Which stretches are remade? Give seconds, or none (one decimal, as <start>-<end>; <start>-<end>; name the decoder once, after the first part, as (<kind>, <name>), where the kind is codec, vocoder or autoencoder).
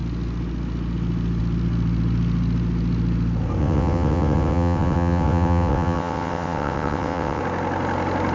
3.6-7.4 (vocoder, WaveNeXt)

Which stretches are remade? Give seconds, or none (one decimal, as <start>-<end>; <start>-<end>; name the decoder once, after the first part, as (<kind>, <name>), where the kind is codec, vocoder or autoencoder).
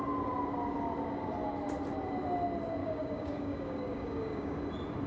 2.8-4.6 (codec, DAC)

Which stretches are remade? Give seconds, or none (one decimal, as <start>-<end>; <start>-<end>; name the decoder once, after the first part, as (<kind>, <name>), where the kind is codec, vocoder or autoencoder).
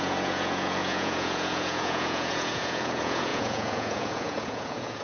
0.0-5.0 (vocoder, Vocos)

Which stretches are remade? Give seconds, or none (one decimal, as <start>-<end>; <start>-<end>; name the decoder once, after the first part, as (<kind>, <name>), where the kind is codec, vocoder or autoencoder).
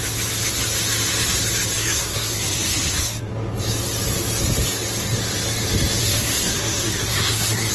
1.8-3.3 (codec, SNAC); 6.0-7.7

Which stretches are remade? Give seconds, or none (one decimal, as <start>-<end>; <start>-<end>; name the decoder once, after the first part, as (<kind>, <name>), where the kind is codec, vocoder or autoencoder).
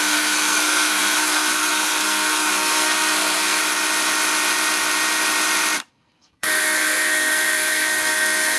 0.0-3.6 (codec, SNAC); 5.9-8.6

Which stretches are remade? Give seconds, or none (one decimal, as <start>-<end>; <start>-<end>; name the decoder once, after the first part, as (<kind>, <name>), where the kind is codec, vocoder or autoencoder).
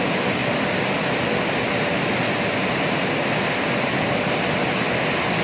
none